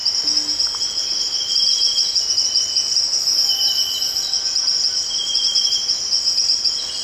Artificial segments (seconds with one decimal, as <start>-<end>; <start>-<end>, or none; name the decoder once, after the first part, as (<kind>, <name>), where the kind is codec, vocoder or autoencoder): none